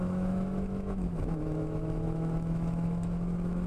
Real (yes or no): no